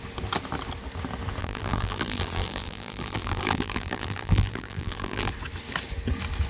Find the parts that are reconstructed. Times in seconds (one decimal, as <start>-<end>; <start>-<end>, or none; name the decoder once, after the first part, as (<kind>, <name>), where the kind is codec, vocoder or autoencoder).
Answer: 1.4-5.3 (vocoder, BigVGAN v2)